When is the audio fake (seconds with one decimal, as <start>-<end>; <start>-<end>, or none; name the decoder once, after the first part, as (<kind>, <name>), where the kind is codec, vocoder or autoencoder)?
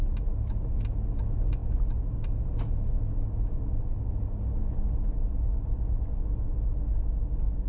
none